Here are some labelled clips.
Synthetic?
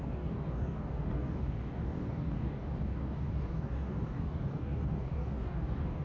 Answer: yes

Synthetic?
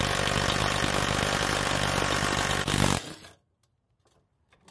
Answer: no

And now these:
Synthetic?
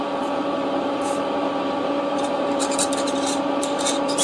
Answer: yes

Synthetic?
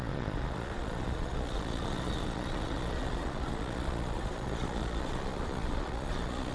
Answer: yes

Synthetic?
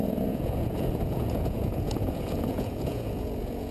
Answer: yes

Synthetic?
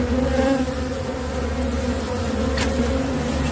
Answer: no